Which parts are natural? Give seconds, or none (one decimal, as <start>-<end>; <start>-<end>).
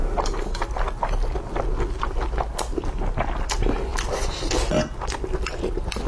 0.0-6.1